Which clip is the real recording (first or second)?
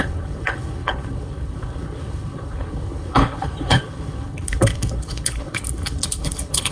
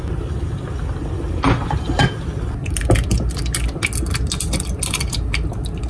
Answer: second